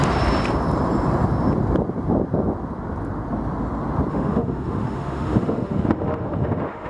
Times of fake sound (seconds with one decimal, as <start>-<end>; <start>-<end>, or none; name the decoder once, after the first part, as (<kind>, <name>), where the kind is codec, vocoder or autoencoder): 4.1-6.9 (autoencoder, DAC-VAE)